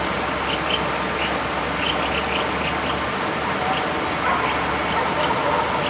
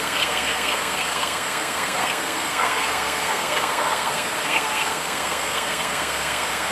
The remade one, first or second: second